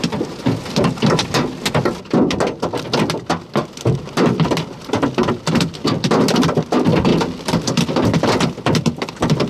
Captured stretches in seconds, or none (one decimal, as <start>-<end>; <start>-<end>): 0.0-9.5